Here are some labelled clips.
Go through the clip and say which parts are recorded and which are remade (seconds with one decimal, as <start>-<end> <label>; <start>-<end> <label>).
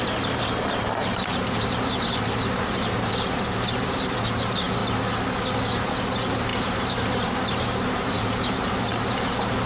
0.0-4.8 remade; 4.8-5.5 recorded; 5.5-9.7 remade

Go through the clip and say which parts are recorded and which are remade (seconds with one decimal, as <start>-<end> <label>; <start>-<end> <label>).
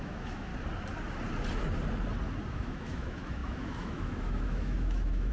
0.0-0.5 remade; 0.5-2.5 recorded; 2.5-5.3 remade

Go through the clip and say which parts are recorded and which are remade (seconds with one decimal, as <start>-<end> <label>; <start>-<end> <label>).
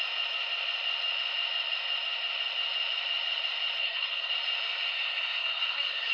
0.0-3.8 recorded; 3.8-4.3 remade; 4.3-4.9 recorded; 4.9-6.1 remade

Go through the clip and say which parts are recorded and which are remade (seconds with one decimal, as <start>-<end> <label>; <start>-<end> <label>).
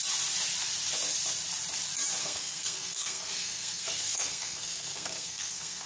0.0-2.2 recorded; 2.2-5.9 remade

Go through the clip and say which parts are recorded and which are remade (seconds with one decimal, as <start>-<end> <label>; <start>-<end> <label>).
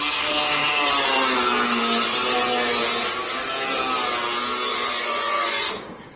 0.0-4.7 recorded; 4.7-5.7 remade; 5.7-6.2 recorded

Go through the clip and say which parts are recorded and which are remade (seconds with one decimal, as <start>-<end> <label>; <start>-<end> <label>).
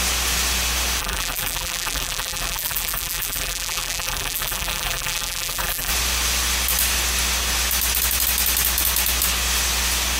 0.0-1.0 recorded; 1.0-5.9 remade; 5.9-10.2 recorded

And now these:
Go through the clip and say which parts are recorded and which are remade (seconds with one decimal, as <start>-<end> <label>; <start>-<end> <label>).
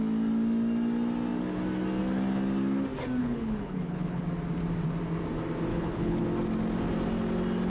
0.0-3.2 recorded; 3.2-4.2 remade; 4.2-5.7 recorded; 5.7-6.2 remade; 6.2-7.7 recorded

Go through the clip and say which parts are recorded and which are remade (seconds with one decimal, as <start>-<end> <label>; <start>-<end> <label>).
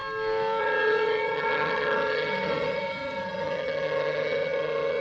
0.0-0.6 recorded; 0.6-5.0 remade